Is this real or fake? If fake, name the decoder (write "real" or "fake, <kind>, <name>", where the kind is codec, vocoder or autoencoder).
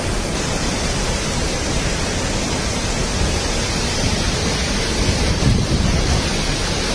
real